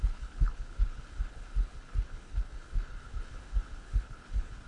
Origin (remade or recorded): remade